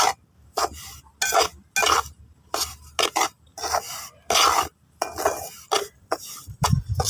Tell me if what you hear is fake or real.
real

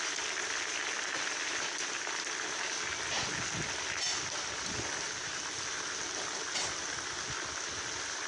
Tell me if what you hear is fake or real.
real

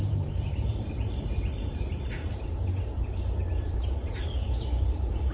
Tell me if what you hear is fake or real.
fake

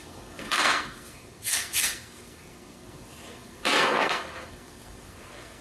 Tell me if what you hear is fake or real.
fake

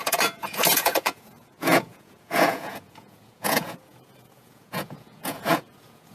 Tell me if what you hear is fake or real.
fake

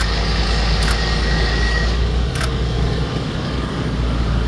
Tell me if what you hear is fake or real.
fake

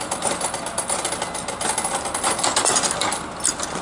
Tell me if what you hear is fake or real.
real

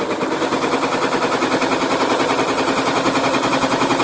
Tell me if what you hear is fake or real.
real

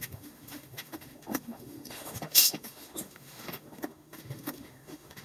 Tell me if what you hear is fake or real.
fake